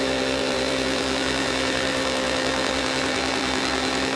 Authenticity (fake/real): fake